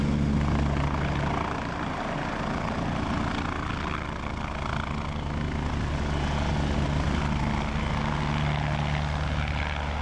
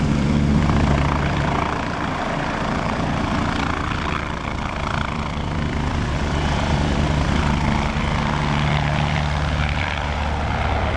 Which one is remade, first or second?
second